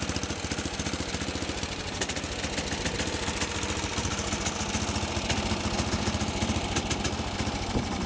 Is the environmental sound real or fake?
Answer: real